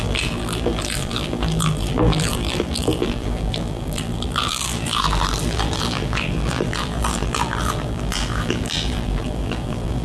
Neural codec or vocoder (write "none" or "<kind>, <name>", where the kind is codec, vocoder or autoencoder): vocoder, BigVGAN v2